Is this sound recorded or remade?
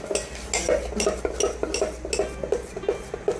recorded